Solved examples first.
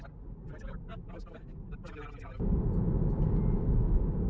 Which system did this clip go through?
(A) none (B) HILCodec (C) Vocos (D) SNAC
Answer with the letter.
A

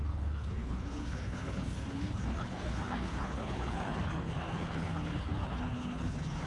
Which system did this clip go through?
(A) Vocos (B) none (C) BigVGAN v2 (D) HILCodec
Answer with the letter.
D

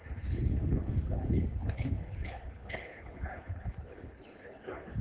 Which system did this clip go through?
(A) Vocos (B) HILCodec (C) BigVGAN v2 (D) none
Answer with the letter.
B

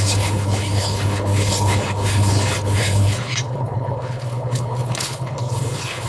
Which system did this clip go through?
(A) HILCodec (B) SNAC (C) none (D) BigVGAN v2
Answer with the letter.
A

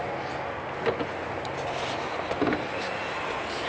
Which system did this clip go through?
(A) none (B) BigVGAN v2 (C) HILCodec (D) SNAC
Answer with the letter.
A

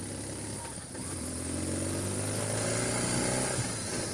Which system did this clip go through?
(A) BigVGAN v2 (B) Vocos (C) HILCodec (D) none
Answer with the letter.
D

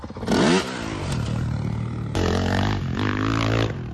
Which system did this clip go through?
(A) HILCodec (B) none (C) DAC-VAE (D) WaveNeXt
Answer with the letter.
B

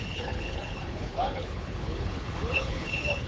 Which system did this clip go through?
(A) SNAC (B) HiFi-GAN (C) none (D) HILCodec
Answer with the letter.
D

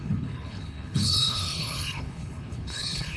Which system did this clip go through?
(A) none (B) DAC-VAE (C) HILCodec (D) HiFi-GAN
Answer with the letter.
C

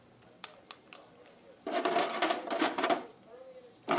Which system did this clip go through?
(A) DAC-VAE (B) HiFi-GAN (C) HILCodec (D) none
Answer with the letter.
D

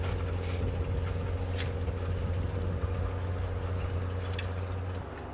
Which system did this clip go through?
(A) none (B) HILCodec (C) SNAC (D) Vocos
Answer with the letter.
A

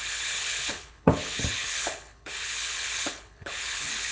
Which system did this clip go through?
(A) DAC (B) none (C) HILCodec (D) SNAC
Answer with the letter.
C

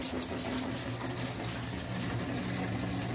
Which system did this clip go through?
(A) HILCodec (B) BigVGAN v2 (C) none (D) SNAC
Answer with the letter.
C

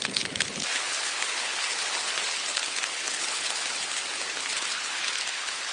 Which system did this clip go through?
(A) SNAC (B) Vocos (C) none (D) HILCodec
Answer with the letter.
D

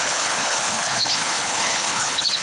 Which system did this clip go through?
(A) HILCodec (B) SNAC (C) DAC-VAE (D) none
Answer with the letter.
A